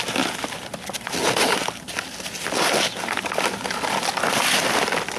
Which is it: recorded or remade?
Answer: recorded